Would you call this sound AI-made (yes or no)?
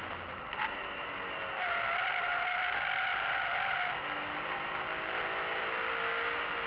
no